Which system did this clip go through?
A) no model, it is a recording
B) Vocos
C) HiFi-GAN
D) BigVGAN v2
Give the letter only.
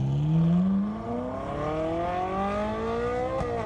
A